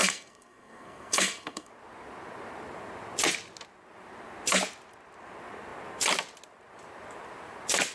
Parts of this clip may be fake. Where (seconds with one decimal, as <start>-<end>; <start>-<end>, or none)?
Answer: 0.0-1.7